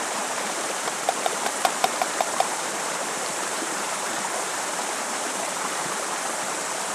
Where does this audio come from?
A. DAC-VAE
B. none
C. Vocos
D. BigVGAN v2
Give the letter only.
D